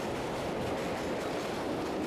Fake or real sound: real